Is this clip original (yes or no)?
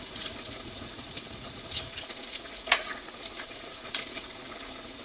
no